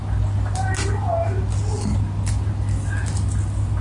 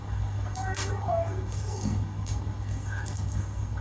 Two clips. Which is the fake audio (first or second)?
second